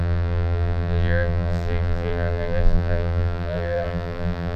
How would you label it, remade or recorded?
remade